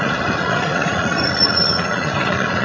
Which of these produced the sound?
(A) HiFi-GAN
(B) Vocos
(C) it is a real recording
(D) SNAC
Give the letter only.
B